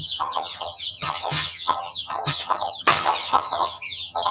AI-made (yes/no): yes